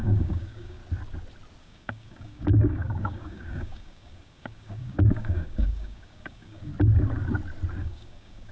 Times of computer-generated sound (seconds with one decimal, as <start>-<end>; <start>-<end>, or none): 0.0-0.8; 1.6-6.7; 7.8-8.5